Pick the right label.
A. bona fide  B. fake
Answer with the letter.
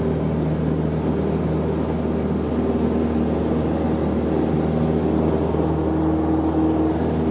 A